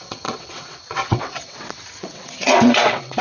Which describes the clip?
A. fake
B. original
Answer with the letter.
A